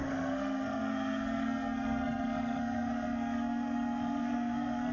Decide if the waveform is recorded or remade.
remade